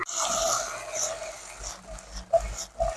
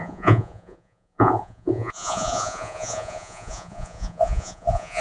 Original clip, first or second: first